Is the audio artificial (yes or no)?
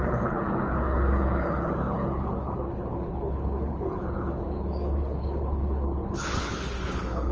yes